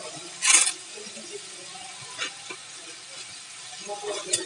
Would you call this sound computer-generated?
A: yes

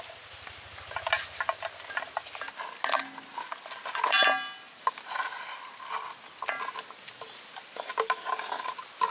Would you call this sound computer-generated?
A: no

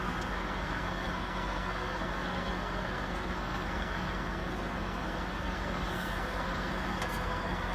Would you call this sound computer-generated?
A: yes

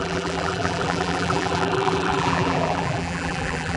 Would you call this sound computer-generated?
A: yes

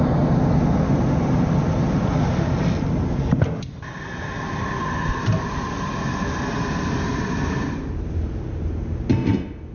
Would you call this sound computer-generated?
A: no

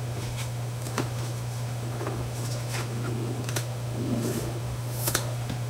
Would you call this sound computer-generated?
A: yes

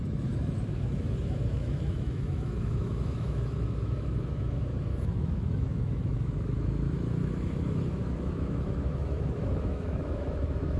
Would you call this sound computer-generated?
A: yes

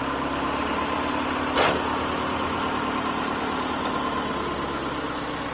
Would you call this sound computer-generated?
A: no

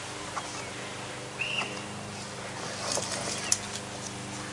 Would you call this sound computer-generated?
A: no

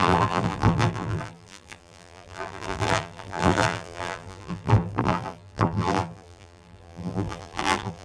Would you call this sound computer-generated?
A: yes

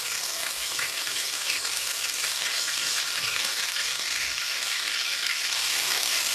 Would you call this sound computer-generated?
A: yes